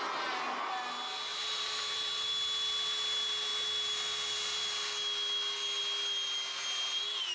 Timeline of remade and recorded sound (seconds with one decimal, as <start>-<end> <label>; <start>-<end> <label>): 0.0-1.3 recorded; 1.3-2.3 remade; 2.3-7.3 recorded